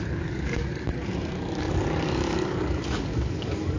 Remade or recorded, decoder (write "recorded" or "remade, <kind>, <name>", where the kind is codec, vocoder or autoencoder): remade, codec, DAC